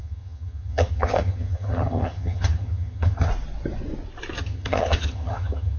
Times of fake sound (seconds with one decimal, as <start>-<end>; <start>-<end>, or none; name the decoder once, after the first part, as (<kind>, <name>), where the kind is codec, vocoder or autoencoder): 0.0-3.3 (vocoder, HiFi-GAN); 4.4-5.8